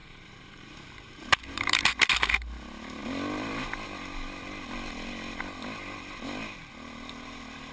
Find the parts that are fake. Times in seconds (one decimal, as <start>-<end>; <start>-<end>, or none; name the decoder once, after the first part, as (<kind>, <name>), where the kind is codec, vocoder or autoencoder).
0.0-1.9 (vocoder, BigVGAN v2)